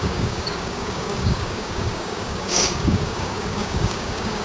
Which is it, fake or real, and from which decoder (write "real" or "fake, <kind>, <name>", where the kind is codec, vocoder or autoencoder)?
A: fake, codec, DAC